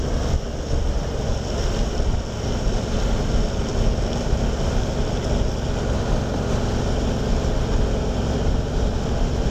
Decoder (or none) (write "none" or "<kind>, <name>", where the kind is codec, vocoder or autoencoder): none